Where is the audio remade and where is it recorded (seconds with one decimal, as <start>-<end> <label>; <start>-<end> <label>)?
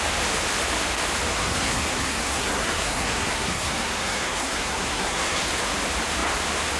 0.0-1.3 recorded; 1.3-5.4 remade; 5.4-6.8 recorded